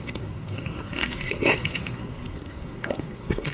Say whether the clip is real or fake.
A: fake